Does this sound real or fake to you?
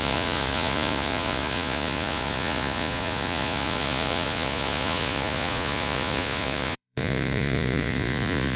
fake